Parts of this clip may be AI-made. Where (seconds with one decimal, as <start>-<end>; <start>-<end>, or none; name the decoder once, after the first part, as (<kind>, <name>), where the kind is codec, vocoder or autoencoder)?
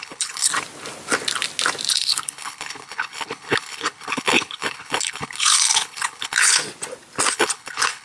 0.0-0.5 (codec, HILCodec); 1.9-6.6; 7.3-8.0